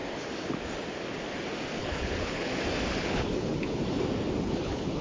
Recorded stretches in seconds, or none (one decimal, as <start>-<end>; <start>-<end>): 0.0-1.8; 2.5-3.0; 3.8-4.4

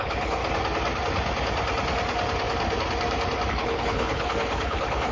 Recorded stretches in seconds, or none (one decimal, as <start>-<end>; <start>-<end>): 0.4-3.5

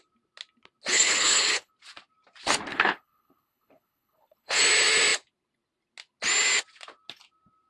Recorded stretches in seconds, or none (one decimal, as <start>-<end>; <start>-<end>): 0.0-0.9; 1.7-2.7; 4.6-7.7

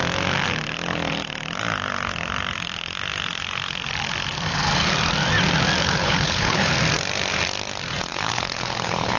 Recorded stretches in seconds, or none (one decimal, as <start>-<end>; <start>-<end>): 0.0-5.8; 6.7-8.1

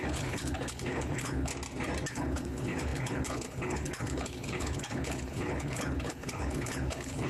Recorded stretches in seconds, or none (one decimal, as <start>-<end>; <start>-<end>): 1.5-2.1

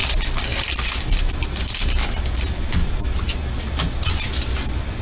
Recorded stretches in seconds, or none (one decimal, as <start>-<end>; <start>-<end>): 0.0-5.0

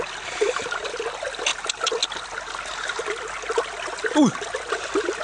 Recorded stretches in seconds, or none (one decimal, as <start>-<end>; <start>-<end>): 0.0-5.2

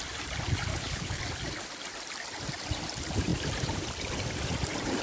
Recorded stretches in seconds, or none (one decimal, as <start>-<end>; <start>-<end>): 0.0-0.7; 1.2-5.0